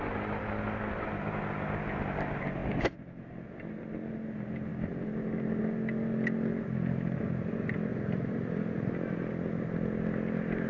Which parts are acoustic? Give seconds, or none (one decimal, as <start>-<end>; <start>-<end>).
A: 0.0-7.9; 9.3-10.7